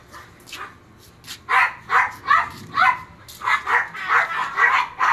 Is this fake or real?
real